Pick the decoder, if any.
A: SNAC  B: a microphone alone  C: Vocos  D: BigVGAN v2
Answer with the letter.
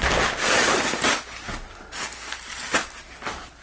B